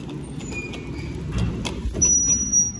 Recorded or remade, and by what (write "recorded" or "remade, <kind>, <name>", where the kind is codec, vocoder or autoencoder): recorded